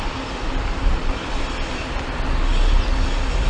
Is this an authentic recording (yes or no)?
yes